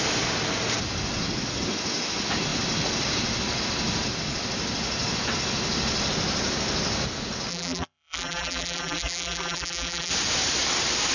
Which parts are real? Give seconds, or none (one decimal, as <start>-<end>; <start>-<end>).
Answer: 0.0-7.5; 10.1-11.1